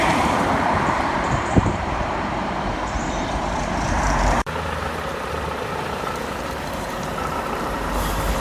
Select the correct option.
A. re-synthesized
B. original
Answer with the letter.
A